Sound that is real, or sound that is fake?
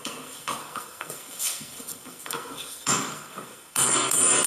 fake